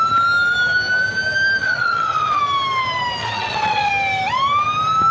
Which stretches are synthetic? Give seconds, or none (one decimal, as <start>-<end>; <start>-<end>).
1.6-2.4; 3.2-3.9